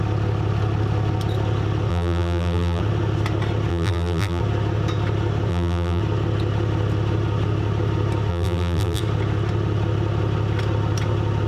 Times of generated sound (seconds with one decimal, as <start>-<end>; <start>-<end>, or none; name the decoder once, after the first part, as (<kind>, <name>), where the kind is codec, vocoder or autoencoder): 1.9-2.8 (vocoder, BigVGAN v2); 3.7-4.4; 5.5-6.0; 8.3-9.0

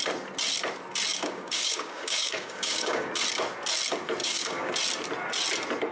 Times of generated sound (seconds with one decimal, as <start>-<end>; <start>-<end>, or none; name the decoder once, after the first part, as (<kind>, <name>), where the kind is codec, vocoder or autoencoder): 1.1-3.1 (codec, DAC); 4.2-4.7